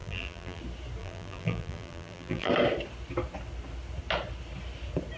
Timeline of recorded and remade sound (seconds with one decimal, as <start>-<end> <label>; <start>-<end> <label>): 0.0-0.6 remade; 0.6-1.0 recorded; 1.0-2.5 remade; 2.5-5.2 recorded